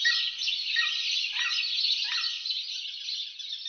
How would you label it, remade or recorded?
recorded